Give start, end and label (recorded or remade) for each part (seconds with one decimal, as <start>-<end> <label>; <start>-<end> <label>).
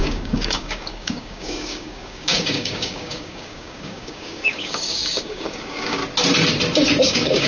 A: 0.0-6.0 remade; 6.0-7.0 recorded; 7.0-7.5 remade